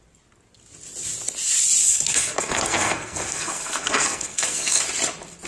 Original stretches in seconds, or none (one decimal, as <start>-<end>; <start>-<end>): 0.0-1.8; 4.8-5.5

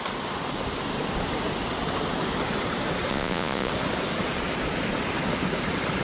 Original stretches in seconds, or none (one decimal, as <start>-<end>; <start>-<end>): 0.0-3.1; 3.7-6.0